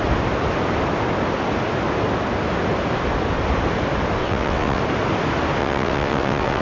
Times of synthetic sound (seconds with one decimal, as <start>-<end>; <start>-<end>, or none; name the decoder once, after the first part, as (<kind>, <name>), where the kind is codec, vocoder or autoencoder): 4.2-4.8 (vocoder, WaveNeXt); 5.6-6.6